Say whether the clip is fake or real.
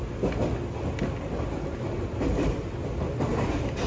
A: real